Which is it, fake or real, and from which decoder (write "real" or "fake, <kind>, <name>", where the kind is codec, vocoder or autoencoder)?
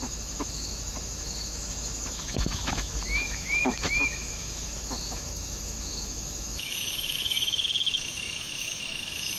fake, autoencoder, DAC-VAE